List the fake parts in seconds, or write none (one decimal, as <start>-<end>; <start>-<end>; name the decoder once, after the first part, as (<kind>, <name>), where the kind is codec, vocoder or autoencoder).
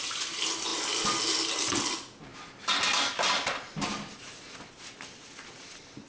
none